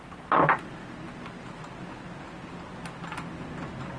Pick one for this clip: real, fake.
real